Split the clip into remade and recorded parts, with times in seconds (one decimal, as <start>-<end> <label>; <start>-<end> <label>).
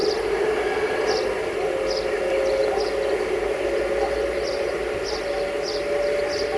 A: 0.0-6.6 recorded